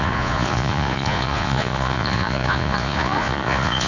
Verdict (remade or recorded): remade